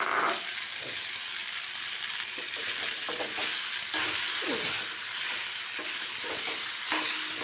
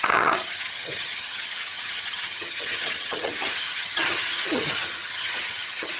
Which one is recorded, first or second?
first